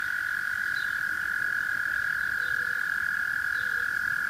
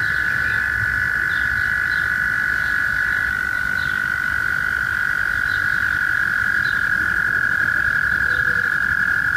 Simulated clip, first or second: first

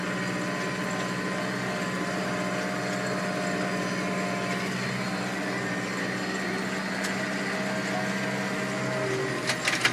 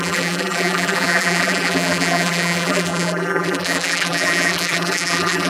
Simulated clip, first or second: second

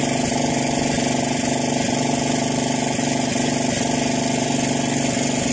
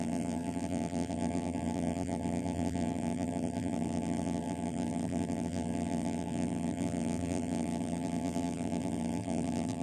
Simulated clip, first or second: second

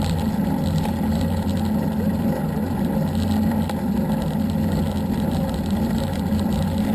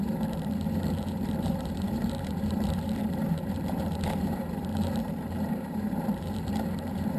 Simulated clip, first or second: second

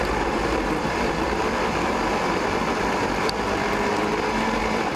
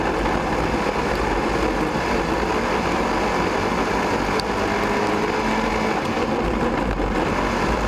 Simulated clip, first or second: first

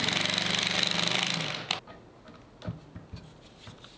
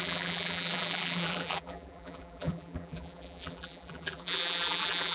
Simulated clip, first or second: second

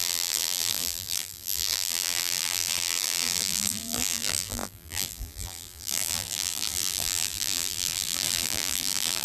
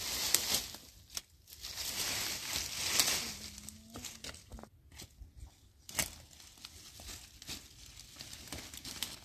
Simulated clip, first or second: first